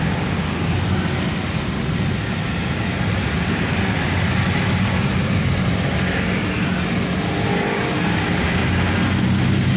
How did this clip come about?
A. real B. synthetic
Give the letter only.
A